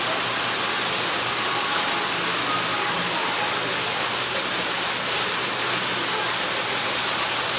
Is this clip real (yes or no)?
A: yes